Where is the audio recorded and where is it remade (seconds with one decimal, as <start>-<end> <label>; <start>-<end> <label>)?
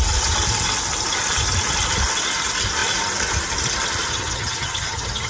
0.0-4.1 recorded; 4.1-5.3 remade